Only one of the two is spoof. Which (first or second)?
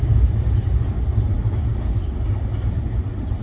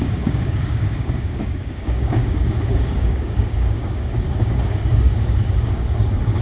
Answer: second